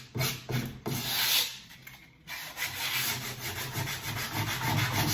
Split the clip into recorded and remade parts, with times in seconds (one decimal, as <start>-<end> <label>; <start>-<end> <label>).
0.0-5.1 recorded